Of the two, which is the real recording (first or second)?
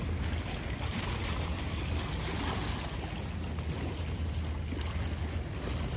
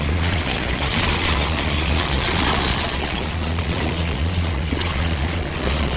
first